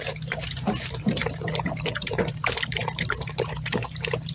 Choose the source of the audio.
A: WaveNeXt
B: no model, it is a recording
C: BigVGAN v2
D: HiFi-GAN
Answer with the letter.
C